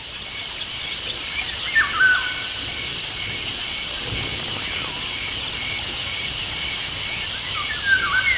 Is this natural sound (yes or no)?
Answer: yes